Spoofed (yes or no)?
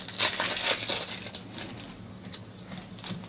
no